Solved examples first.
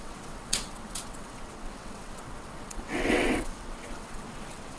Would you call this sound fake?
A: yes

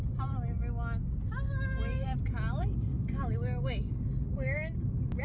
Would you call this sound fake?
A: no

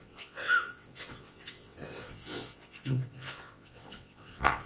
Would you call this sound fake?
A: yes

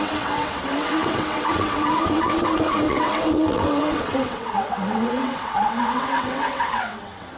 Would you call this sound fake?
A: yes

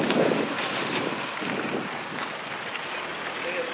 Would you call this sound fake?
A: no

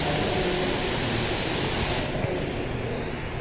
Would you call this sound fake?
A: no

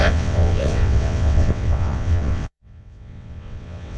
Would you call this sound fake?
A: yes